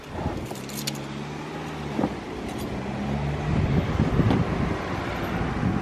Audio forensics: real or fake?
real